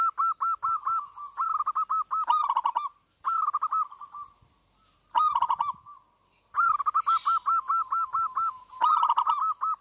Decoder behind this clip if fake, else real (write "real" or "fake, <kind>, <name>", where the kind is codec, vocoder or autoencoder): real